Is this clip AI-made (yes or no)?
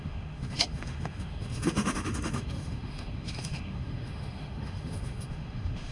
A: yes